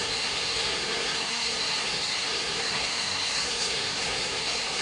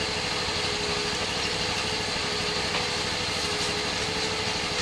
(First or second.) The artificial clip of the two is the first